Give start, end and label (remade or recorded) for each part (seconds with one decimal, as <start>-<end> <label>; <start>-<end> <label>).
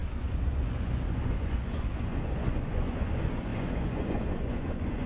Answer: 0.0-5.1 remade